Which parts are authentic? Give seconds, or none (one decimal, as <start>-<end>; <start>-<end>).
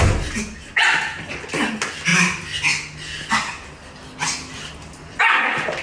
0.0-5.8